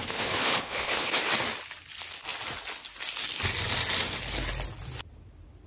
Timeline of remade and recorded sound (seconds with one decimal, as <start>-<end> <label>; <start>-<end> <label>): 0.0-1.3 remade; 1.3-5.7 recorded